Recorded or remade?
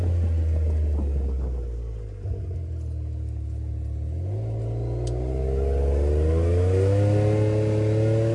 recorded